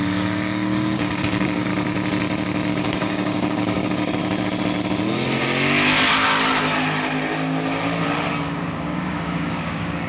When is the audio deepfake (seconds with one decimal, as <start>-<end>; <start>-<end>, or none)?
0.0-1.7; 2.7-4.2; 8.3-10.1

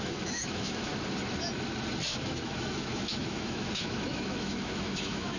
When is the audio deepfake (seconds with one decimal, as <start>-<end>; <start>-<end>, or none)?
0.0-0.9; 2.1-5.4

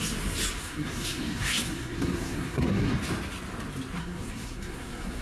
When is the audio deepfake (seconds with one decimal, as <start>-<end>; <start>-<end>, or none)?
0.6-2.9; 4.0-5.2

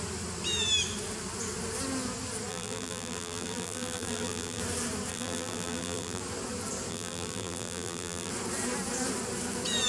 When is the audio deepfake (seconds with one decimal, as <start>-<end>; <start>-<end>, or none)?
2.5-4.6; 5.1-6.2; 6.9-8.3

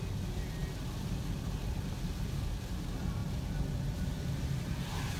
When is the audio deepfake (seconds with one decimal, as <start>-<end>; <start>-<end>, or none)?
0.6-1.9

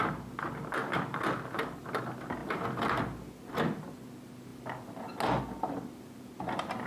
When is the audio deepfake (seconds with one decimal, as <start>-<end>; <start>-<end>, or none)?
none

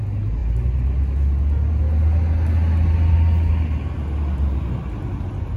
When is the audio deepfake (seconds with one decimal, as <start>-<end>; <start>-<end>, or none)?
none

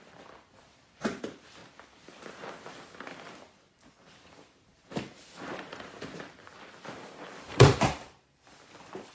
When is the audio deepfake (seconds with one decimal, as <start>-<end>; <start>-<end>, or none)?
0.0-1.6; 4.0-6.5; 7.4-9.1